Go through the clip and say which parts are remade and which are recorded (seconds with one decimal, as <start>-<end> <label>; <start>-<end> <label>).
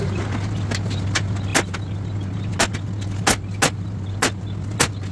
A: 0.0-5.1 recorded